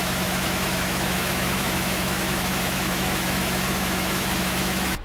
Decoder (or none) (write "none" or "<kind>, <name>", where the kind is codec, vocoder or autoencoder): autoencoder, DAC-VAE